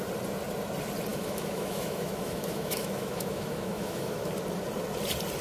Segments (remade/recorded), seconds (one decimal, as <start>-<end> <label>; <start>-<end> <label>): 0.0-1.1 recorded; 1.1-4.3 remade; 4.3-5.4 recorded

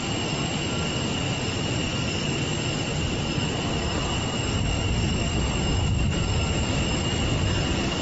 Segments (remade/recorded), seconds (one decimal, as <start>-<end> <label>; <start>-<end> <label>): 0.0-2.9 recorded; 2.9-3.5 remade; 3.5-8.0 recorded

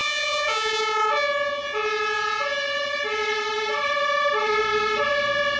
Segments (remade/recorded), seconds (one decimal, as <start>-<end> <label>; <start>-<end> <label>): 0.0-0.7 remade; 0.7-5.6 recorded

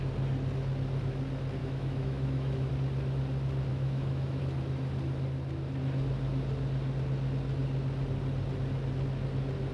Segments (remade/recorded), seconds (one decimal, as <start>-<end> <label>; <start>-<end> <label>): 0.0-1.6 recorded; 1.6-2.7 remade; 2.7-3.7 recorded; 3.7-4.4 remade; 4.4-9.7 recorded

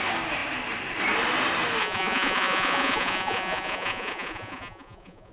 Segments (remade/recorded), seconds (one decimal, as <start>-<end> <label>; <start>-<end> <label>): 0.0-1.8 recorded; 1.8-5.3 remade